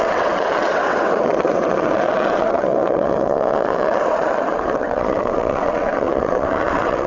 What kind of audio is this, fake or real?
fake